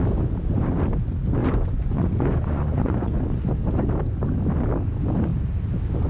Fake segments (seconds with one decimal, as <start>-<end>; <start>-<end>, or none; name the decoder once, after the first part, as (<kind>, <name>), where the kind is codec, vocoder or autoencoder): 1.4-3.5 (vocoder, Vocos)